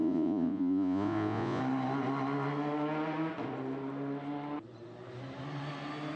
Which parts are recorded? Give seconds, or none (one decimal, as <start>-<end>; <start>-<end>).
1.6-6.2